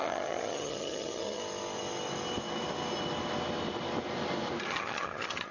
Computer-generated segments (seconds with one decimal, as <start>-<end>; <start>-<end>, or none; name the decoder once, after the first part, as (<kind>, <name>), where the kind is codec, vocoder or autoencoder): 0.0-1.4 (vocoder, HiFi-GAN); 4.7-5.5